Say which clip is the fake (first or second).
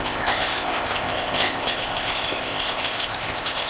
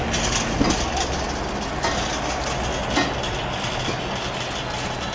first